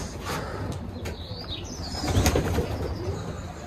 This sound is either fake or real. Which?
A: real